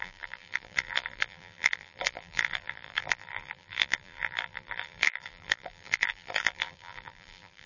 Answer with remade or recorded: remade